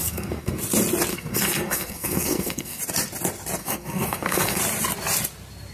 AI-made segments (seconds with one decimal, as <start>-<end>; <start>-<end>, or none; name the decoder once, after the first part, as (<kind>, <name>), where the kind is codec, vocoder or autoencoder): 0.0-0.6 (codec, SNAC); 1.1-2.8; 3.6-4.6